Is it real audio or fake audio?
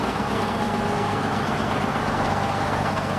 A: fake